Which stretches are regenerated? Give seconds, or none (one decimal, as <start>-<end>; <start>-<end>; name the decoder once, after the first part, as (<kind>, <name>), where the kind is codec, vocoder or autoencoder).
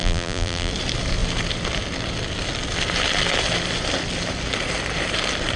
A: 0.0-0.7 (vocoder, BigVGAN v2)